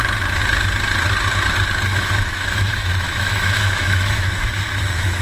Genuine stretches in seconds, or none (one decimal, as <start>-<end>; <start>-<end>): 0.0-1.9

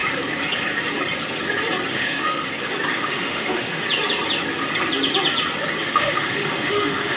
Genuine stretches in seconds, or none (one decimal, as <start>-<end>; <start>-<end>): 0.0-1.9; 2.5-2.9; 3.8-5.8

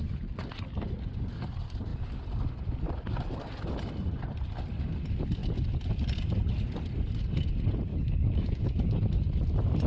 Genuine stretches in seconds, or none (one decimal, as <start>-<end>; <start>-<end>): 0.0-7.9; 9.0-9.9